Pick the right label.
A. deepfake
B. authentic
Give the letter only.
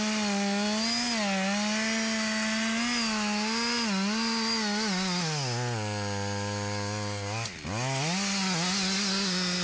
B